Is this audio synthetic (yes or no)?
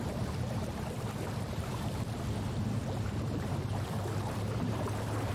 yes